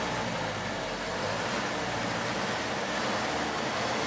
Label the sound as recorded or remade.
recorded